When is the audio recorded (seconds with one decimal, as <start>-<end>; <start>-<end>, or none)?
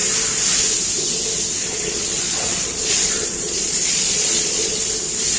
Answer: 0.0-1.6; 4.8-5.4